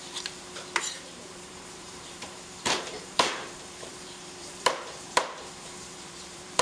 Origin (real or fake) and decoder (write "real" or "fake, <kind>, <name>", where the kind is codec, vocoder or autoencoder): fake, vocoder, BigVGAN v2